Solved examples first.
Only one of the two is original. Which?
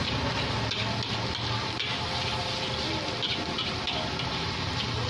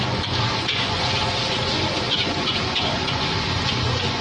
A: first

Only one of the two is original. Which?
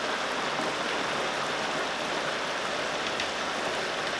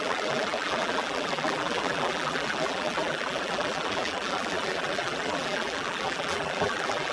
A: first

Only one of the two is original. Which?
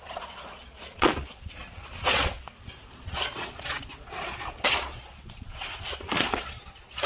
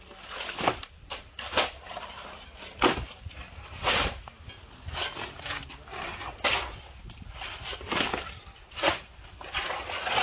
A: second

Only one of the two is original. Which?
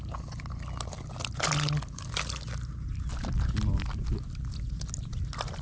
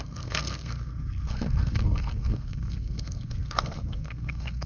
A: first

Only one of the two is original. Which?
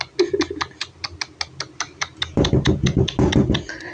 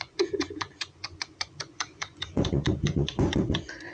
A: first